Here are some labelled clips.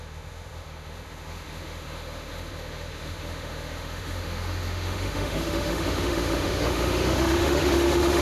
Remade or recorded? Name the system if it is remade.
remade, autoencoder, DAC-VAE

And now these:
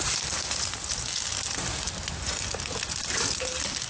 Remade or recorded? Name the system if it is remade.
recorded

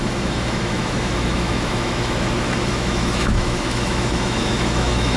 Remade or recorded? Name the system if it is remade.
remade, autoencoder, DAC-VAE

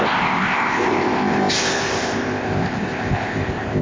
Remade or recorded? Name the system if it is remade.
remade, codec, ZipCodec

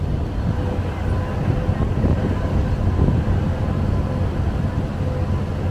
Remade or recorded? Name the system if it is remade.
recorded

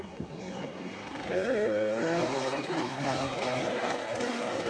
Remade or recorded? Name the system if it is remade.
remade, codec, SNAC